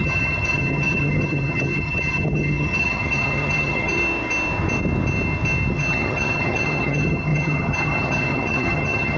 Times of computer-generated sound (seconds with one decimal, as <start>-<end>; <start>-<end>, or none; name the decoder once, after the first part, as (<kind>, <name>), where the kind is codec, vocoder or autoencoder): 0.0-4.0 (vocoder, HiFi-GAN); 5.7-9.2